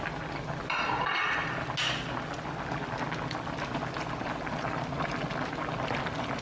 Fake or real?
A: real